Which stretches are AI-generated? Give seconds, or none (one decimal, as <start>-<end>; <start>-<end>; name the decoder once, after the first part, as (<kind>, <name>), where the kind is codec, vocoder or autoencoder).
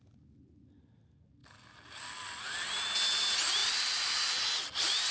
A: none